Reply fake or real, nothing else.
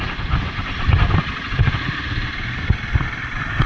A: real